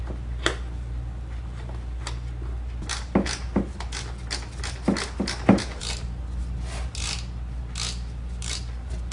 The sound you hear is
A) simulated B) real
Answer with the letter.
B